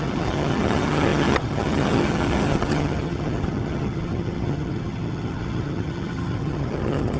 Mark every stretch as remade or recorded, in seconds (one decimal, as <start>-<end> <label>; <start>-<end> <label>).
0.0-7.2 remade